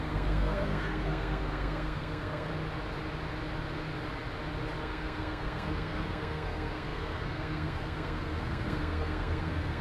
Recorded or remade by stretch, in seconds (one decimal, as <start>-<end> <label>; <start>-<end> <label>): 0.0-2.5 remade; 2.5-4.8 recorded; 4.8-9.8 remade